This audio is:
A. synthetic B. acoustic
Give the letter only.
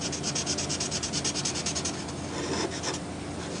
B